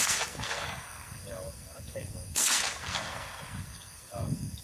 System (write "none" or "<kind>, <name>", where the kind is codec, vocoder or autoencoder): codec, SNAC